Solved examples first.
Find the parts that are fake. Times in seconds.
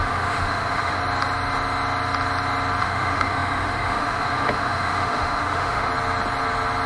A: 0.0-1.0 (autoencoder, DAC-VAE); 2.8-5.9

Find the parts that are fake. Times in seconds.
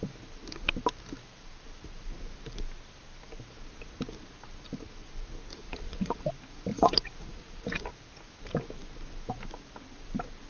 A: 5.5-6.3 (vocoder, Vocos); 6.7-7.9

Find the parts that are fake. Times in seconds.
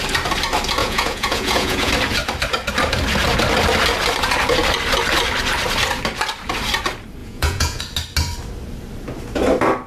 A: 0.8-1.9 (vocoder, Vocos); 7.2-7.8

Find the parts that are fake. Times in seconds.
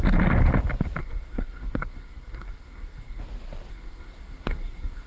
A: 1.0-3.2 (codec, SNAC); 3.7-5.1